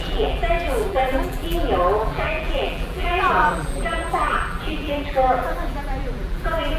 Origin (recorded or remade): remade